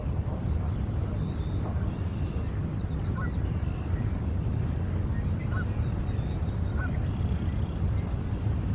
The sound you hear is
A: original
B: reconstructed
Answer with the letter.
A